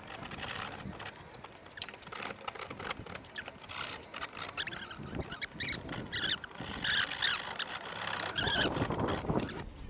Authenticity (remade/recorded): recorded